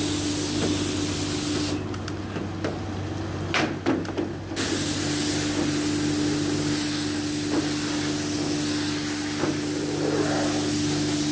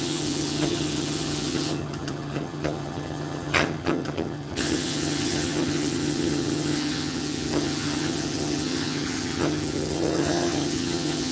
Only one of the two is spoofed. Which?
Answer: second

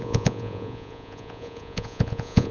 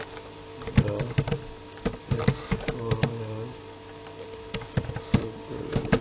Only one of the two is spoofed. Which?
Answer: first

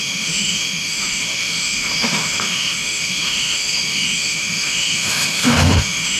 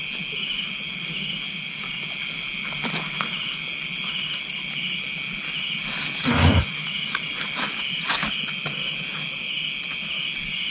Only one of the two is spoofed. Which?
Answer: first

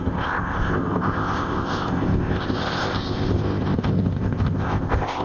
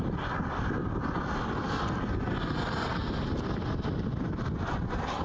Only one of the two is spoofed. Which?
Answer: first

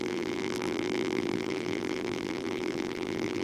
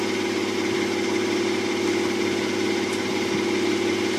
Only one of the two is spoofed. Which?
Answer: first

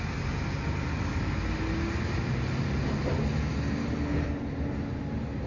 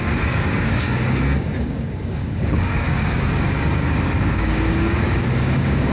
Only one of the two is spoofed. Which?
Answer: second